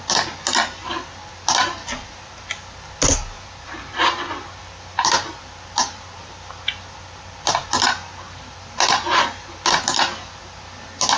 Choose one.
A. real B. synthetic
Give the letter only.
A